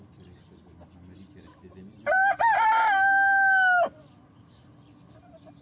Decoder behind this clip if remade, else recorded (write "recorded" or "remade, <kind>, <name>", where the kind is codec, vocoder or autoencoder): recorded